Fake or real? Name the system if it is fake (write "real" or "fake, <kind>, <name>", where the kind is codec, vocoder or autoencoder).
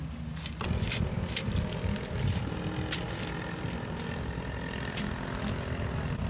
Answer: real